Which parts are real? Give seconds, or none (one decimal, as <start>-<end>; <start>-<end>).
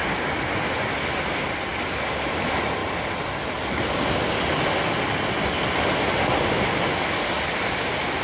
0.5-8.2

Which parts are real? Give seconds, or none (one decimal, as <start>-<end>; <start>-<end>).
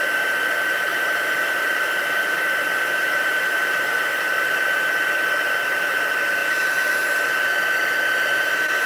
0.0-0.9; 2.2-3.0; 4.3-8.9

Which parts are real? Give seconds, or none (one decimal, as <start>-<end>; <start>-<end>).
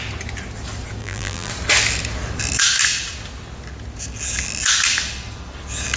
0.0-1.0; 1.5-6.0